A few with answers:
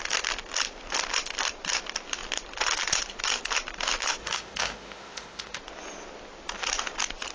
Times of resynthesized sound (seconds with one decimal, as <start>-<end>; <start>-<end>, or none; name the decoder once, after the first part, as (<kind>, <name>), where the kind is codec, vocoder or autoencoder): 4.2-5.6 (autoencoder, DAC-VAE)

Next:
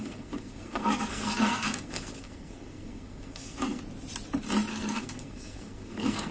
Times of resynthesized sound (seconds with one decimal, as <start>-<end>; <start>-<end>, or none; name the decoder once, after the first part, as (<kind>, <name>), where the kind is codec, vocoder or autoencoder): 0.0-3.8 (codec, SNAC); 4.7-6.3

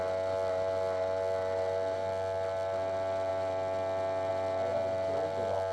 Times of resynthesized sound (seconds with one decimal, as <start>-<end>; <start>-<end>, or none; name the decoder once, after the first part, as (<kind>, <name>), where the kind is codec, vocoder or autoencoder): none